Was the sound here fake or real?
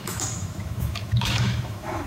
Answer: fake